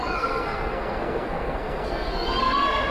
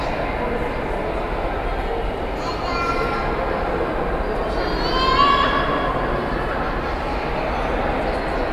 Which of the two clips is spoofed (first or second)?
first